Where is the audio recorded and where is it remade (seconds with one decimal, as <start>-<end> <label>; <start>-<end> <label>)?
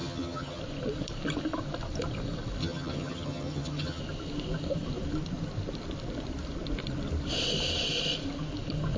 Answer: 0.0-0.6 remade; 0.6-2.6 recorded; 2.6-4.0 remade; 4.0-9.0 recorded